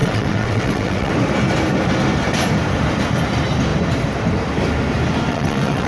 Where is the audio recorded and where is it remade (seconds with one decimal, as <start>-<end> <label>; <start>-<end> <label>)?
0.0-1.1 remade; 1.1-5.3 recorded; 5.3-5.9 remade